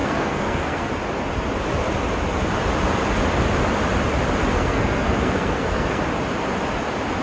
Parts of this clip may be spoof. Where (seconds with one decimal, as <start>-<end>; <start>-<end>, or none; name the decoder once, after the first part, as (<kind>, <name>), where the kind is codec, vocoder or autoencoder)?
0.0-0.9 (codec, SNAC); 4.5-6.0